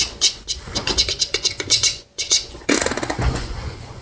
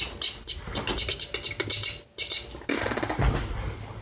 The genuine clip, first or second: second